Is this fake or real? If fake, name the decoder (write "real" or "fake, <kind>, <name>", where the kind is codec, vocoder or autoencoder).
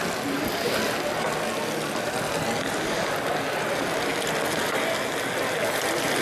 real